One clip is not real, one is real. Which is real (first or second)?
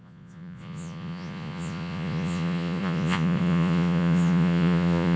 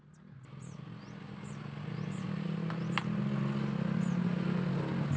second